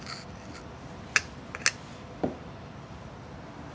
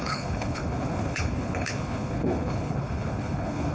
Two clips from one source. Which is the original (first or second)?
first